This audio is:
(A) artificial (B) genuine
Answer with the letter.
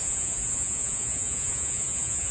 A